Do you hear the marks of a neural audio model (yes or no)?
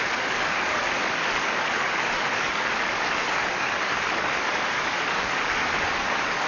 yes